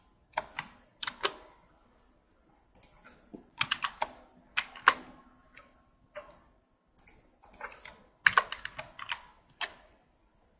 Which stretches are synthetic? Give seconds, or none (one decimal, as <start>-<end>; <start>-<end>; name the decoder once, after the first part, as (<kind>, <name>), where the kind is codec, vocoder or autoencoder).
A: 3.3-3.8 (vocoder, Vocos)